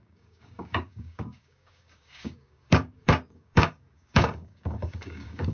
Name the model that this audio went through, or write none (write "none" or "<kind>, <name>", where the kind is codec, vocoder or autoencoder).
codec, DAC